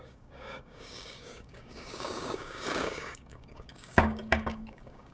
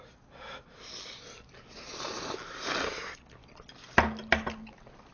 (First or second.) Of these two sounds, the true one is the second